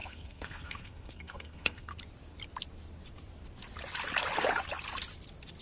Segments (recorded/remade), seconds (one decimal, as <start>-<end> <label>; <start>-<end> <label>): 0.0-1.9 remade; 1.9-5.6 recorded